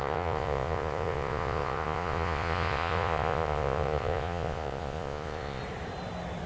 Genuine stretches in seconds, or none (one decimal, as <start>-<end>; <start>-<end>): 5.6-6.5